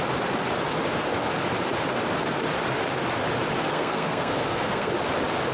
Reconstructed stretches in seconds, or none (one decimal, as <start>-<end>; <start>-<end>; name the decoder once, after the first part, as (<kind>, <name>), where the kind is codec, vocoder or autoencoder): 3.7-4.9 (codec, SNAC)